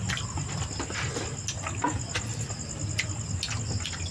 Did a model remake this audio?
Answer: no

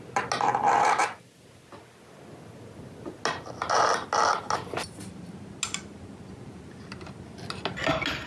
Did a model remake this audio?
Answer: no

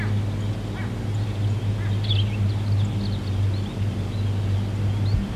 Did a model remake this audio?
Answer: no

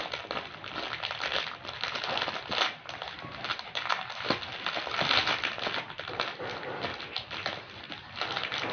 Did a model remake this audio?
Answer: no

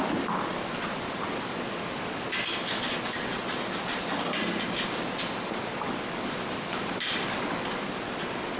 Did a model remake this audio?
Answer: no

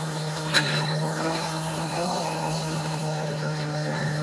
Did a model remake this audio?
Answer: yes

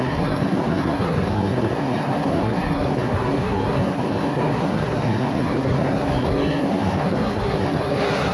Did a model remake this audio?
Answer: yes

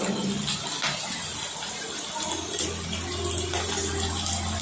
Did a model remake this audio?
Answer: no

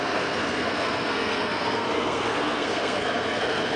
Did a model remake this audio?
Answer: yes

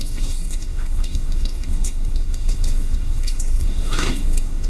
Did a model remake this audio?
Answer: yes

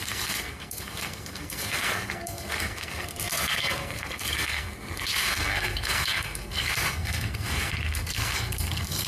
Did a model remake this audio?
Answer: yes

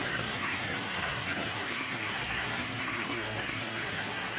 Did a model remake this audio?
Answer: yes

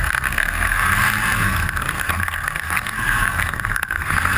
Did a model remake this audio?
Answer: yes